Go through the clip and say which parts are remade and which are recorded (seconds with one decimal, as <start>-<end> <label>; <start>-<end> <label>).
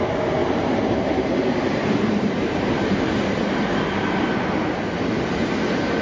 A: 0.0-0.4 recorded; 0.4-3.2 remade; 3.2-6.0 recorded